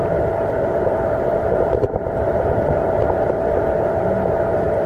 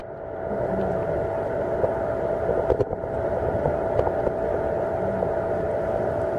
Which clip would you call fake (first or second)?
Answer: first